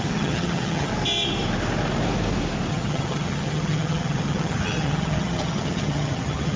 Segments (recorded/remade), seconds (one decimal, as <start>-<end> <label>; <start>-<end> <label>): 0.0-0.9 remade; 0.9-2.7 recorded; 2.7-6.6 remade